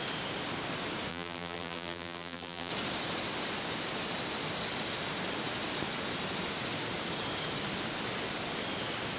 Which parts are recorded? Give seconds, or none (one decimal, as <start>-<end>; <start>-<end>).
0.0-1.1; 2.7-9.2